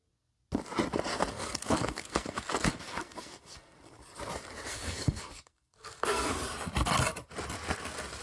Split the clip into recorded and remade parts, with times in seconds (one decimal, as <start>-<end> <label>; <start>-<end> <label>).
0.0-1.1 recorded; 1.1-4.0 remade; 4.0-4.7 recorded; 4.7-6.4 remade; 6.4-8.2 recorded